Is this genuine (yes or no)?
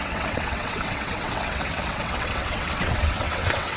no